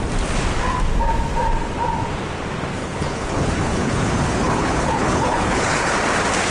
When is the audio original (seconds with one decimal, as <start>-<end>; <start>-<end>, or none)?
0.0-2.8; 5.9-6.5